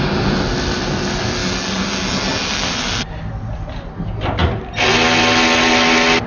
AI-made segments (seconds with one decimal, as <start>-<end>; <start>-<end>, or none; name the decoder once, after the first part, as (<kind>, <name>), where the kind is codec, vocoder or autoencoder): none